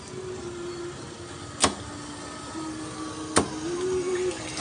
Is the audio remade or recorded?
recorded